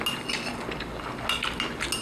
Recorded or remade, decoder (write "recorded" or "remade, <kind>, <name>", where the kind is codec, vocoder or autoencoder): recorded